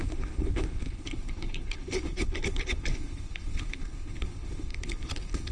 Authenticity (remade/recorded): remade